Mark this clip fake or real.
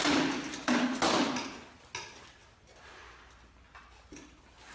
real